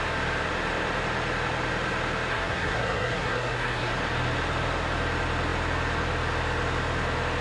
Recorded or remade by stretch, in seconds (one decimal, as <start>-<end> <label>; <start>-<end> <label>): 0.0-2.3 recorded; 2.3-3.9 remade; 3.9-7.4 recorded